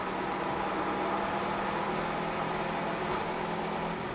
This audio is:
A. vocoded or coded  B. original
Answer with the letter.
B